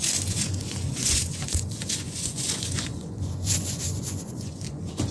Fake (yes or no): yes